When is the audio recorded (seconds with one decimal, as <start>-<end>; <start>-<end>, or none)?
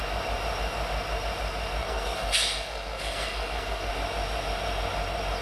0.0-1.8; 3.9-5.4